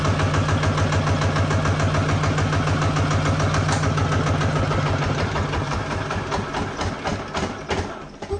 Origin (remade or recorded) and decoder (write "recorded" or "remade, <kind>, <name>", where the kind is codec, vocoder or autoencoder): recorded